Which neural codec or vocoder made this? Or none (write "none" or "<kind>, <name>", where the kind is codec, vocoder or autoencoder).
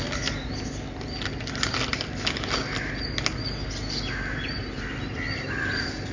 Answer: none